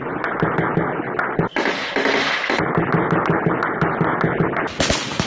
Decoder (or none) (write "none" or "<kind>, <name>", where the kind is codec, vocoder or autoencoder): none